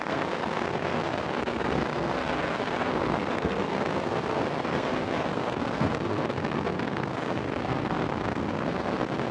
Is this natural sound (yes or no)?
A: no